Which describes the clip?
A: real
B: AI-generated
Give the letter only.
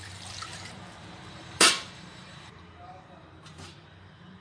B